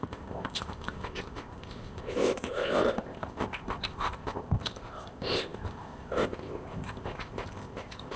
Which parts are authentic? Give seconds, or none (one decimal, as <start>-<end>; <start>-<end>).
none